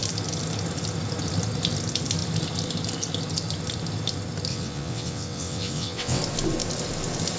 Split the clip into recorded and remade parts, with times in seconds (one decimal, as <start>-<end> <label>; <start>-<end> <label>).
0.0-4.5 recorded; 4.5-6.2 remade; 6.2-7.4 recorded